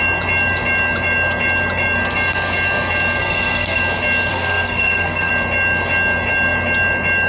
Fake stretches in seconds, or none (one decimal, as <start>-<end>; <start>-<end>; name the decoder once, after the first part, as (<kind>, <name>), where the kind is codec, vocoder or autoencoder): 3.2-3.8 (codec, SNAC); 4.3-5.3